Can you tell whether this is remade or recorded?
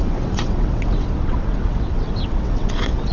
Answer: remade